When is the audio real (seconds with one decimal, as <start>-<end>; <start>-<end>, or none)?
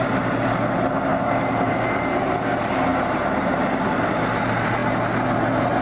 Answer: 0.0-2.9; 3.4-5.8